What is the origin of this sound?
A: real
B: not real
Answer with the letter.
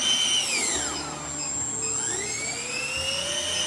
A